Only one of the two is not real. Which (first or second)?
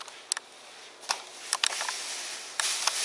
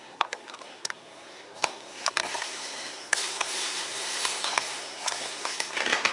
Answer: second